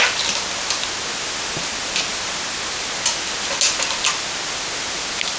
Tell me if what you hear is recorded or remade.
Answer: recorded